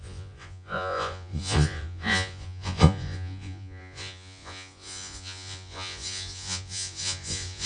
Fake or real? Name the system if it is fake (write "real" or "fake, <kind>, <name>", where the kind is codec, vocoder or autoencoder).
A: fake, vocoder, Vocos